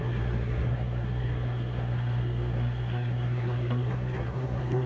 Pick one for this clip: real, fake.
fake